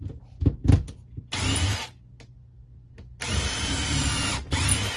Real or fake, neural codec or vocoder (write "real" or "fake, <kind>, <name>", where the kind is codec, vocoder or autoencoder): real